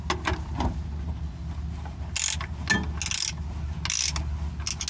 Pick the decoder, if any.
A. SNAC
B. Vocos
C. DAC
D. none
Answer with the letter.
D